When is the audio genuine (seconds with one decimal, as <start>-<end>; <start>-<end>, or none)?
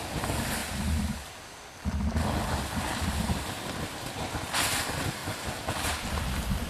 0.0-6.7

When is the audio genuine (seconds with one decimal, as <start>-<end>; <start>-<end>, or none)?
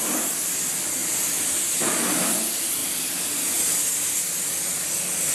0.0-5.3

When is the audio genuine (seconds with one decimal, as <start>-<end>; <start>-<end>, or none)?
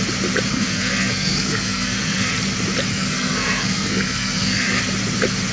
0.0-0.5; 2.3-2.9; 4.8-5.5